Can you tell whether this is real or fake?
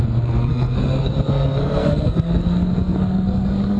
fake